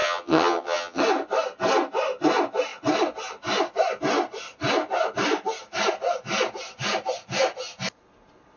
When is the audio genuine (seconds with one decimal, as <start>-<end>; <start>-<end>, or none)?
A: 1.0-8.6